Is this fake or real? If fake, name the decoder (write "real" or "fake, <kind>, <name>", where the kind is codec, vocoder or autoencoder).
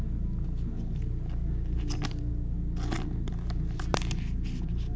real